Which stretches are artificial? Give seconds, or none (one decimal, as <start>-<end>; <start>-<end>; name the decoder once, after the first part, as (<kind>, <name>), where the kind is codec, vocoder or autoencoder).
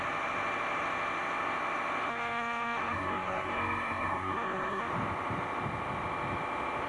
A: 2.1-4.9 (codec, SNAC)